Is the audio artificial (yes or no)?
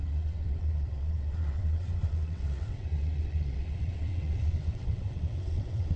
yes